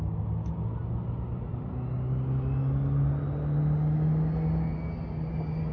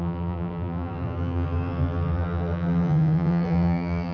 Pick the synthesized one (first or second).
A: second